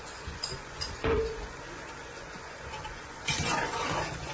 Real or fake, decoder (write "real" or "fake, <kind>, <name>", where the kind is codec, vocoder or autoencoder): fake, vocoder, Vocos